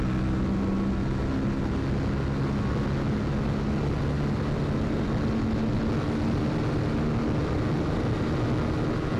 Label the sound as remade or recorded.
recorded